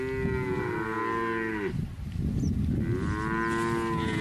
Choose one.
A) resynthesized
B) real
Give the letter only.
B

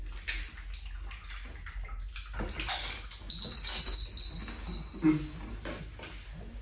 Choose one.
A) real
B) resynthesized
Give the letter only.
A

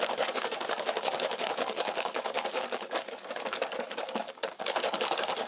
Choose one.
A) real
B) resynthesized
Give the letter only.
B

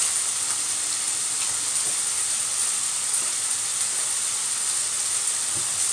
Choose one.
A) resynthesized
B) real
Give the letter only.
A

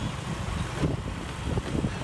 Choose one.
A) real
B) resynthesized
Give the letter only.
A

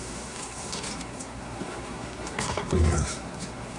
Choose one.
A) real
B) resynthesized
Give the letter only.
B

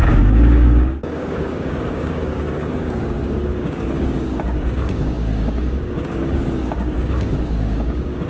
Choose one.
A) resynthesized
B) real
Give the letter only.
A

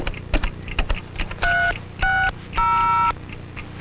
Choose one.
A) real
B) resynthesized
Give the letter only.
A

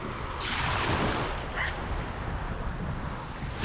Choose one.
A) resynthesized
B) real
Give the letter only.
B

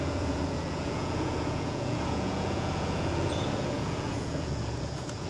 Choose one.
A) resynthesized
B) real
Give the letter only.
A